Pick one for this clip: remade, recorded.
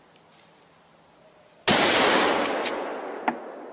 recorded